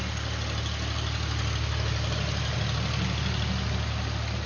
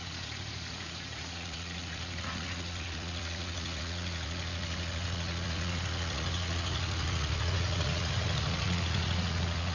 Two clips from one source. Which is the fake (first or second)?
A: second